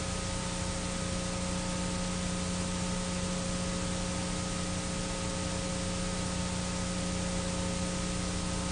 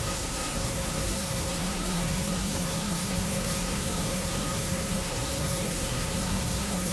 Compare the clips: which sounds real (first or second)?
first